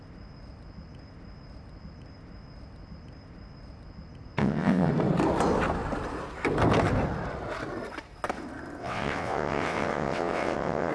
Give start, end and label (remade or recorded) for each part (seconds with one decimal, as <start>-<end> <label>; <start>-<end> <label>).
0.0-4.4 recorded; 4.4-4.9 remade; 4.9-8.8 recorded; 8.8-10.9 remade